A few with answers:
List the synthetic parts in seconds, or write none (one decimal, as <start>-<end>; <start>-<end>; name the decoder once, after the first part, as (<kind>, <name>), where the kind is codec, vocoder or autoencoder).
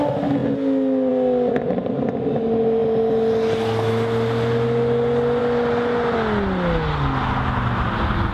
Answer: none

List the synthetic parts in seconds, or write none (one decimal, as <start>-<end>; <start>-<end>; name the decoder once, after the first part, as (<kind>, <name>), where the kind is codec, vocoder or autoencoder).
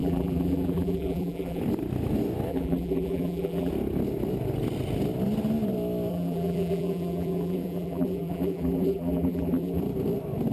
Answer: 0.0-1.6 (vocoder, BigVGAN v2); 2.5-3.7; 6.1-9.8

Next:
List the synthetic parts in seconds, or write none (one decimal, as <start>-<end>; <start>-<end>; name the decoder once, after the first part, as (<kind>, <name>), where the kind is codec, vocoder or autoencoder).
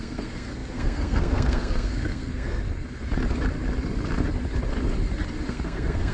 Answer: 0.0-2.5 (codec, SNAC); 5.5-6.1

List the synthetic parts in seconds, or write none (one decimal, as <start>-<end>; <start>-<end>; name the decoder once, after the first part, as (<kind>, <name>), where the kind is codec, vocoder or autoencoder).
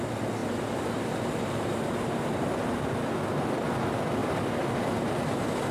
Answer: none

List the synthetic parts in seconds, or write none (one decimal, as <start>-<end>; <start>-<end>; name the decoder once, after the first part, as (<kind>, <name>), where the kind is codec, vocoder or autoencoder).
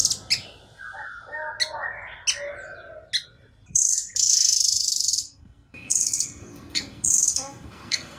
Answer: 3.7-8.2 (codec, SNAC)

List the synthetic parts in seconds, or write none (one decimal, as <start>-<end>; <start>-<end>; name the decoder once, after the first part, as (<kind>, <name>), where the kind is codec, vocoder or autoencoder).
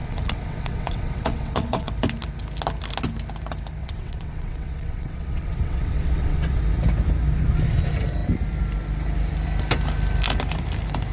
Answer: 0.0-1.9 (vocoder, WaveNeXt); 3.8-6.6